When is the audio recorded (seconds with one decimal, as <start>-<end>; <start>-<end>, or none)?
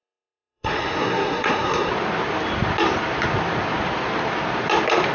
1.9-5.1